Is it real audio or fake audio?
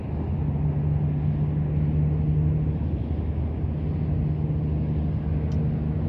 real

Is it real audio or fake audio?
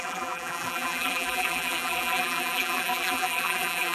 fake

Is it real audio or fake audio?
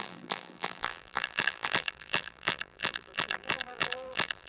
fake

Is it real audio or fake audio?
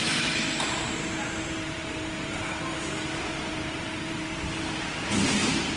fake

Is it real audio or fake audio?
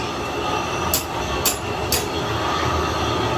real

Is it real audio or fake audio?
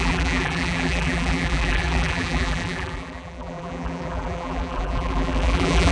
fake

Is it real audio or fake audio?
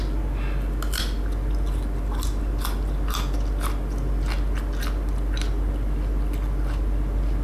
real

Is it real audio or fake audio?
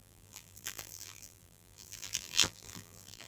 fake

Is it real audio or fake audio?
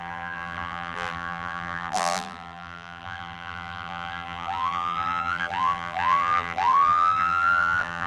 fake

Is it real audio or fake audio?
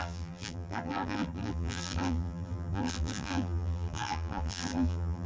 fake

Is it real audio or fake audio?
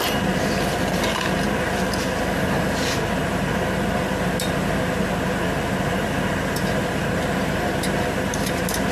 real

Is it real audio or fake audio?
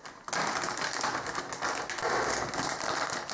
real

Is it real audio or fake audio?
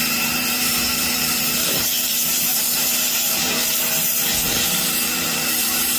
fake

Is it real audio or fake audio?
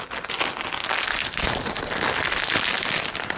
real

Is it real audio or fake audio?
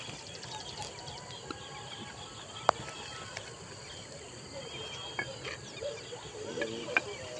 real